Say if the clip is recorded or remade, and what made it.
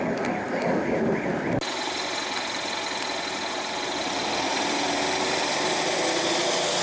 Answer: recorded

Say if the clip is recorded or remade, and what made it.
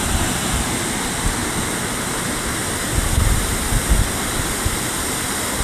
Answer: recorded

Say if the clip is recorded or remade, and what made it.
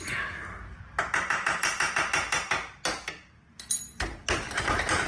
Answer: recorded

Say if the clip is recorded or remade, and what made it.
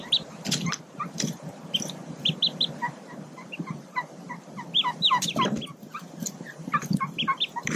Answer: remade, vocoder, BigVGAN v2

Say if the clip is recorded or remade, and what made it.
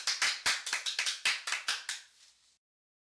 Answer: recorded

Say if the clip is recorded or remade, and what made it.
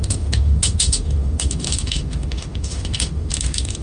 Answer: remade, autoencoder, DAC-VAE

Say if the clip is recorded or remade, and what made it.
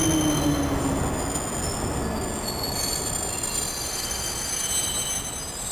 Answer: recorded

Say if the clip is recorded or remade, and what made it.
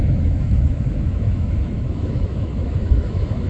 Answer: remade, autoencoder, DAC-VAE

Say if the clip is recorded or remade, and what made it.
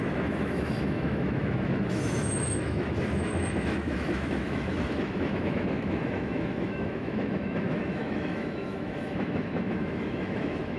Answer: remade, autoencoder, DAC-VAE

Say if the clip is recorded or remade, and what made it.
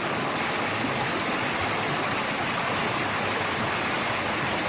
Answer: recorded